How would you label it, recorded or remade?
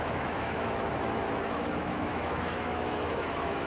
remade